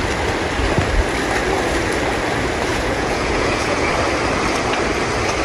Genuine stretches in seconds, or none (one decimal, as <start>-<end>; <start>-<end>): 0.0-2.7; 3.9-5.4